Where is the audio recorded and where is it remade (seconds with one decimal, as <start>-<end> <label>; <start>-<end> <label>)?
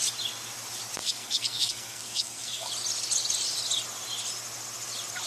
0.0-1.0 recorded; 1.0-2.7 remade; 2.7-5.3 recorded